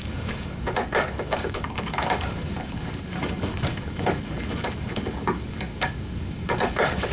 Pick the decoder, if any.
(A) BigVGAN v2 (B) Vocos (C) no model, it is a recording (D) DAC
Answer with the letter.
D